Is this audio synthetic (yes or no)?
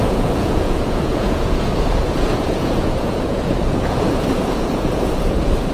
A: yes